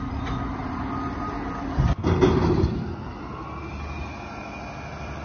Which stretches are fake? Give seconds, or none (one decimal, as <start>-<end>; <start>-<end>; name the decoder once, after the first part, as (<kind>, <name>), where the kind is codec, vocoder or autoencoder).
none